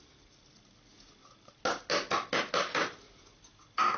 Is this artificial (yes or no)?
no